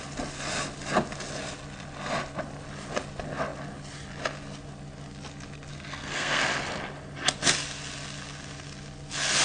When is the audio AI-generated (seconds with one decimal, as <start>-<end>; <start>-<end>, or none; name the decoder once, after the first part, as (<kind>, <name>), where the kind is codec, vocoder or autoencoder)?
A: 5.7-6.4 (codec, SNAC)